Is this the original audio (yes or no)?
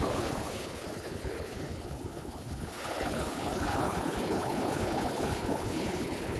no